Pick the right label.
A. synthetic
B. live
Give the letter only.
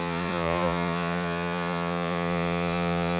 A